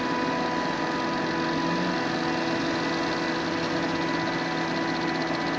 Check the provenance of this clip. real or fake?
real